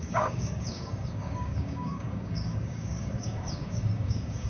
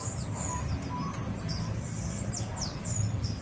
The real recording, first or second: second